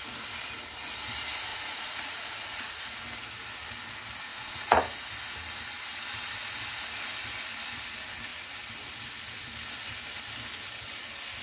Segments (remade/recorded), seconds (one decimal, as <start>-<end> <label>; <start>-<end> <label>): 0.0-1.5 recorded; 1.5-3.0 remade; 3.0-4.3 recorded; 4.3-4.8 remade; 4.8-11.4 recorded